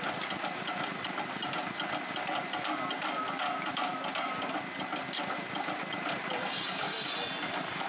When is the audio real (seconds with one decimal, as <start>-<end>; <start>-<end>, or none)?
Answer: 0.0-7.9